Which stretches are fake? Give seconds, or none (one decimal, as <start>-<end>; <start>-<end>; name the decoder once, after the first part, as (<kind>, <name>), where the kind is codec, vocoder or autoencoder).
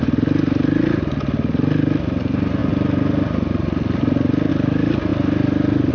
none